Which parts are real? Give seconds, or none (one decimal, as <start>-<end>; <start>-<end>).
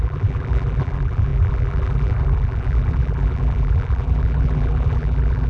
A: none